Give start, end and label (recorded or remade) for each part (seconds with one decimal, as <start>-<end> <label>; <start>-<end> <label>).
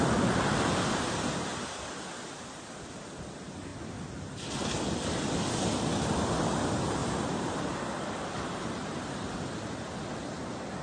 0.0-1.5 recorded; 1.5-3.0 remade; 3.0-3.7 recorded; 3.7-4.5 remade; 4.5-7.0 recorded; 7.0-7.8 remade; 7.8-10.8 recorded